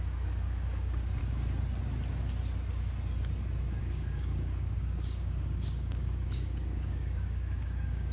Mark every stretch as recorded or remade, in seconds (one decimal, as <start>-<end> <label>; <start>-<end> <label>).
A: 0.0-1.2 remade; 1.2-3.8 recorded; 3.8-8.1 remade